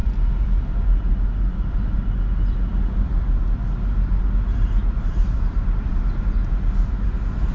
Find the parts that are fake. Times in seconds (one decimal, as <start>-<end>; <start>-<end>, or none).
0.0-2.0; 4.8-5.9